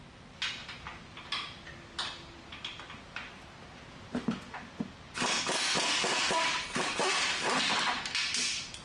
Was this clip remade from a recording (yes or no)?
no